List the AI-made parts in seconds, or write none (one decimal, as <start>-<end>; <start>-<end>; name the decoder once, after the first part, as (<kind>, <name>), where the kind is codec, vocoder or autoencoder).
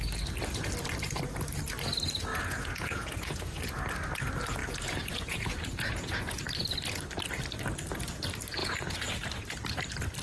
2.3-3.6 (vocoder, Vocos); 4.6-6.4; 8.6-9.2